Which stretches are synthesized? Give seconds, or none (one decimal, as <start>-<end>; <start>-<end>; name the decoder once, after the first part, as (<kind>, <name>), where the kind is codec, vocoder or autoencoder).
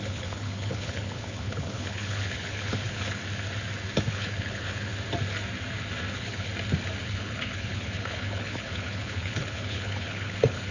0.0-3.2 (codec, HILCodec); 4.1-4.9; 6.1-6.5; 7.0-10.7